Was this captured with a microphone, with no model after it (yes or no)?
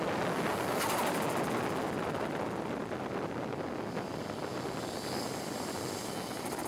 yes